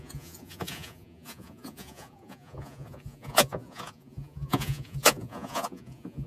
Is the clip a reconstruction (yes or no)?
yes